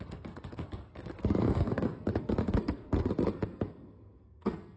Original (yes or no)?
no